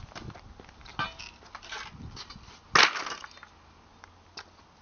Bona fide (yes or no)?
yes